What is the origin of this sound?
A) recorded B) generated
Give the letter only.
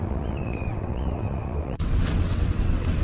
B